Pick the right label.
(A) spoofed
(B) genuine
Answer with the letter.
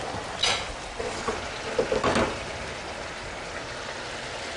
B